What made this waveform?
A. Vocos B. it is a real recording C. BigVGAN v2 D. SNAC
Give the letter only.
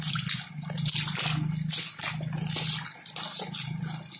B